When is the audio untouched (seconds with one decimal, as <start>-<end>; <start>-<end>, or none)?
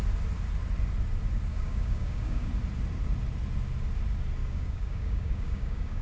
0.0-1.5; 2.5-4.4